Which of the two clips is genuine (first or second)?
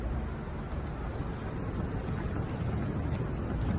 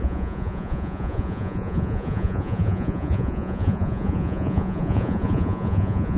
first